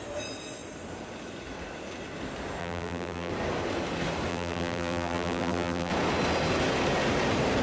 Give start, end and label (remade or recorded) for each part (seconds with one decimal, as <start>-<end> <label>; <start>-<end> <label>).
0.0-2.6 recorded; 2.6-3.3 remade; 3.3-4.3 recorded; 4.3-5.9 remade; 5.9-7.6 recorded